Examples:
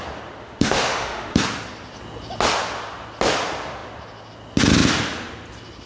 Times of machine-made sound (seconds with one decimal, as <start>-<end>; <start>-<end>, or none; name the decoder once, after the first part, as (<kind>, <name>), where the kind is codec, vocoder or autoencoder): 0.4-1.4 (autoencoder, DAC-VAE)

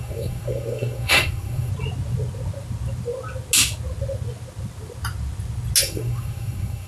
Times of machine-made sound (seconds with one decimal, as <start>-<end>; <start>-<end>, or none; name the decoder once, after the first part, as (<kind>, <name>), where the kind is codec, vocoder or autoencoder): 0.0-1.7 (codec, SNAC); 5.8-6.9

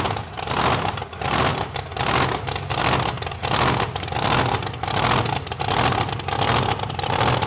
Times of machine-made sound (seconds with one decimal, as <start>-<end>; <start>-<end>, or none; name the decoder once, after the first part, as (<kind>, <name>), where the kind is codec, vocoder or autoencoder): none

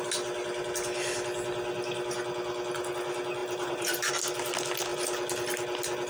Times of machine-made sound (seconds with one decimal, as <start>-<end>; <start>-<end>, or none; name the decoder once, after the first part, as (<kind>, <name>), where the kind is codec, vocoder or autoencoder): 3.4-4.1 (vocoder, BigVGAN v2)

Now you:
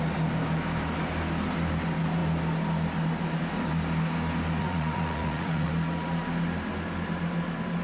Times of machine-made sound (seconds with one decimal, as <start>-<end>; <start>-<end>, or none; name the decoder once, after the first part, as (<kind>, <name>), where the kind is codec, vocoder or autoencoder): 4.6-5.7 (vocoder, Vocos)

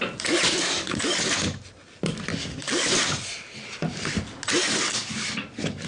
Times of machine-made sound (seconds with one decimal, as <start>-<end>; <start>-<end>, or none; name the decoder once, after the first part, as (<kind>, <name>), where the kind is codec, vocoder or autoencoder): 0.5-1.3 (codec, DAC); 2.3-2.9; 4.6-5.9

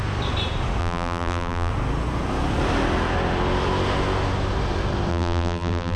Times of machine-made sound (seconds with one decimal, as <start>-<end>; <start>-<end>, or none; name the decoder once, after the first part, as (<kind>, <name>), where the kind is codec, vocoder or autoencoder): 0.8-1.7 (vocoder, BigVGAN v2); 5.1-6.0